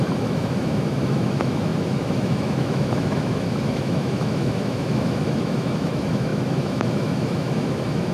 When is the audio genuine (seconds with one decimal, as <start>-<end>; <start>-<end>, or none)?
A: none